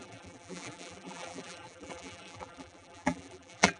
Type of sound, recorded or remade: remade